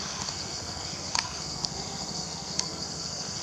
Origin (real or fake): fake